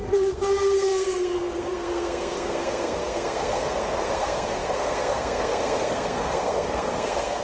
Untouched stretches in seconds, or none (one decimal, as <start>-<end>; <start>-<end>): none